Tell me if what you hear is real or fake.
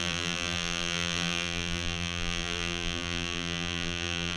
fake